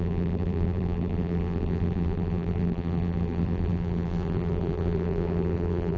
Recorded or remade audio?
remade